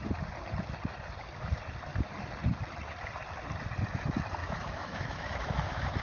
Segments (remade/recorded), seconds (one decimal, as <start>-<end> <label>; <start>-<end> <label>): 0.0-4.4 recorded; 4.4-6.0 remade